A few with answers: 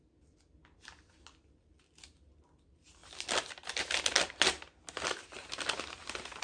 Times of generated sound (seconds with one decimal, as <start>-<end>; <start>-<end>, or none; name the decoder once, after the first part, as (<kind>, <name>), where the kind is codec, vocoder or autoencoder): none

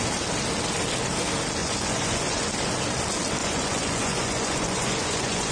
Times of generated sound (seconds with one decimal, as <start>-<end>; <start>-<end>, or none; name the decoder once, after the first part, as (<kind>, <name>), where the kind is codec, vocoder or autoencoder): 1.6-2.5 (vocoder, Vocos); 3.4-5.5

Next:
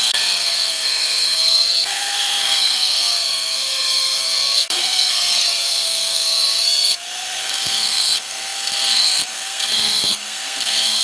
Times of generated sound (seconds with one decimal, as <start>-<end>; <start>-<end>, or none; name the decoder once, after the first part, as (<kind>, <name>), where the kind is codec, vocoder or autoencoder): 0.0-11.0 (codec, SNAC)

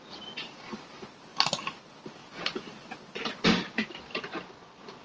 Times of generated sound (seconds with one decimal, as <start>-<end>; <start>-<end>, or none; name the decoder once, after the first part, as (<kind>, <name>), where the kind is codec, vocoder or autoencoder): none